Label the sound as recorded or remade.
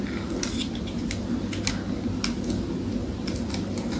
recorded